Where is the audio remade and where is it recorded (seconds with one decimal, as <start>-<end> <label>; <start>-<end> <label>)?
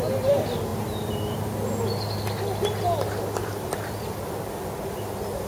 0.0-5.5 recorded